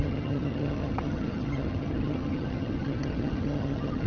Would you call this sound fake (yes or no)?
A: yes